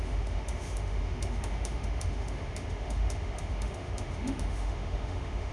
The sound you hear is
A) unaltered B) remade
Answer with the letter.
B